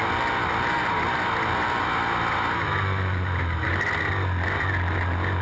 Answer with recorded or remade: recorded